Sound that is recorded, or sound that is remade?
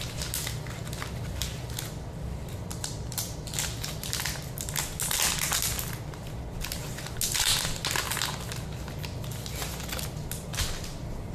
recorded